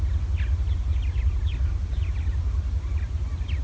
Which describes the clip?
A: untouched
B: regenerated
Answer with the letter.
A